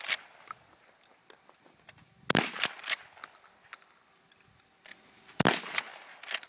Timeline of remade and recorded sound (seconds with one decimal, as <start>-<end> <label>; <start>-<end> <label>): 0.0-4.9 recorded; 4.9-5.4 remade; 5.4-6.5 recorded